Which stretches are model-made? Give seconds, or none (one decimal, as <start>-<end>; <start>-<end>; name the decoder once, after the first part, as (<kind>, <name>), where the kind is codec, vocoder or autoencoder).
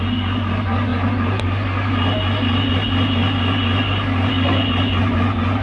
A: none